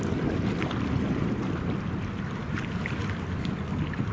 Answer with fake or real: real